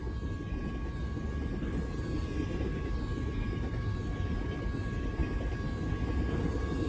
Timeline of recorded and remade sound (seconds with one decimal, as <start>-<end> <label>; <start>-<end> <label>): 0.0-6.9 recorded